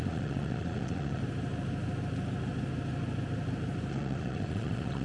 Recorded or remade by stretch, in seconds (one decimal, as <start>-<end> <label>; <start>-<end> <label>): 0.0-1.2 remade; 1.2-3.9 recorded; 3.9-5.0 remade